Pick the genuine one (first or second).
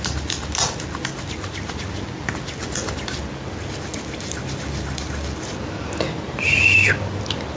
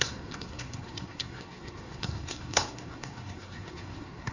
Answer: first